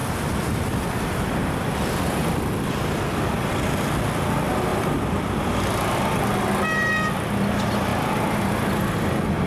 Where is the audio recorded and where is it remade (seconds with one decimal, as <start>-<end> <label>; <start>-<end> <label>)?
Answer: 0.0-3.2 remade; 3.2-4.7 recorded; 4.7-6.2 remade; 6.2-7.9 recorded; 7.9-8.8 remade; 8.8-9.5 recorded

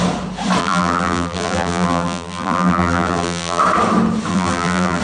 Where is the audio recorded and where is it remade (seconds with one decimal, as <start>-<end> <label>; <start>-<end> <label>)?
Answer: 0.0-0.6 recorded; 0.6-3.6 remade; 3.6-4.3 recorded; 4.3-5.0 remade